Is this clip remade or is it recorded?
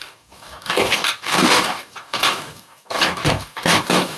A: remade